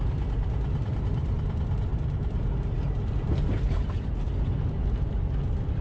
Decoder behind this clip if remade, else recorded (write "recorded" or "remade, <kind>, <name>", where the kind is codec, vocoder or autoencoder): recorded